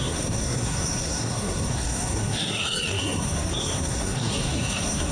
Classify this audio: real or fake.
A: fake